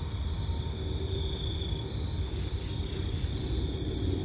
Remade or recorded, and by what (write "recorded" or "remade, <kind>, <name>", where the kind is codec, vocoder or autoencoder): recorded